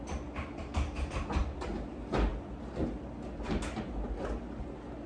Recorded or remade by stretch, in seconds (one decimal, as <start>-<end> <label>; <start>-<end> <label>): 0.0-5.1 recorded